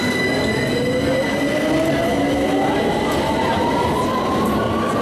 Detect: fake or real real